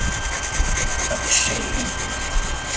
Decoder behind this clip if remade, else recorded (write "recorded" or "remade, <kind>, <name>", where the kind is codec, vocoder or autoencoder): recorded